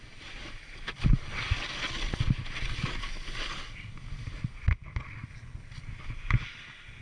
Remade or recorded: recorded